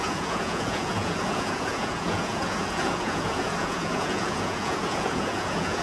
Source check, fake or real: fake